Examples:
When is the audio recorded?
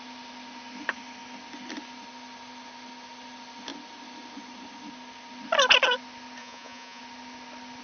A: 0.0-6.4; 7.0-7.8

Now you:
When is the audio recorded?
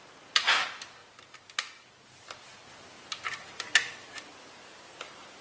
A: 0.0-5.4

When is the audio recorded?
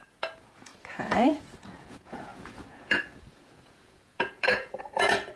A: none